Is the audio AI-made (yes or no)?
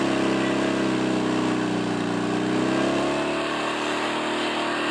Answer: no